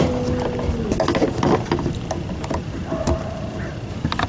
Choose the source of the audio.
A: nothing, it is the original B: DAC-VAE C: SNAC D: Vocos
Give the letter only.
A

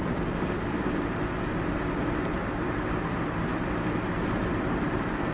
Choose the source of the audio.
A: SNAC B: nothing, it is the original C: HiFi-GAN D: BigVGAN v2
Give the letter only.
B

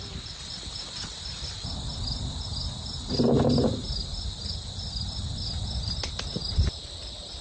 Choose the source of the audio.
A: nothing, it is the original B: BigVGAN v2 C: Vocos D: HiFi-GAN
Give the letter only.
A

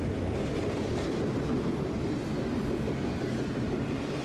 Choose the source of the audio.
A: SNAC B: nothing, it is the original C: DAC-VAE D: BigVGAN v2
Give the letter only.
B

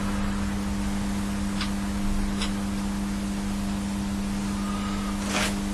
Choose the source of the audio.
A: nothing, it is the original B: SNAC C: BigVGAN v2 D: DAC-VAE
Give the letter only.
A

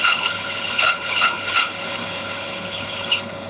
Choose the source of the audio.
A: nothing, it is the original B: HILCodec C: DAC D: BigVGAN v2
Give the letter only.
B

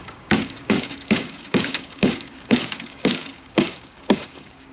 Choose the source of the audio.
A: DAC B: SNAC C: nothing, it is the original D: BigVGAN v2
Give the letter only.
A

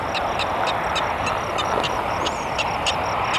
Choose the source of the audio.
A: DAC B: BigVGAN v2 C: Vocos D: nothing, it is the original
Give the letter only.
D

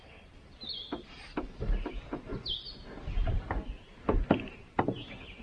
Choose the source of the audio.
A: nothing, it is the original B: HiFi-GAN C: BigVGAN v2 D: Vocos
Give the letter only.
A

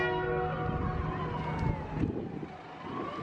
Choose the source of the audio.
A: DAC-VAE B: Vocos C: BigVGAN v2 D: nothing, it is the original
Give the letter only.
D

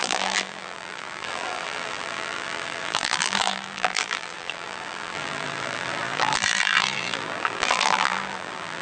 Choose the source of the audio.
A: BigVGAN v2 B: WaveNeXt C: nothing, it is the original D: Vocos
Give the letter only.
A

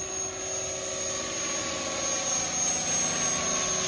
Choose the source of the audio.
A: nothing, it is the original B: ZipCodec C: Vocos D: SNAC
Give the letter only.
A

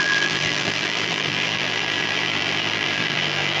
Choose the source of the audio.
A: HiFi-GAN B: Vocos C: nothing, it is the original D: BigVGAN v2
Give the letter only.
D